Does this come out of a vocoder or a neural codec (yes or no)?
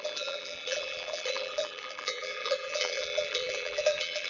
yes